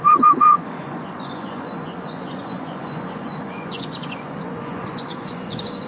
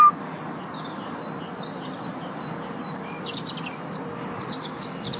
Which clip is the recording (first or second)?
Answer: second